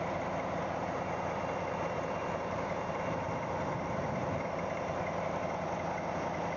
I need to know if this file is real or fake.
real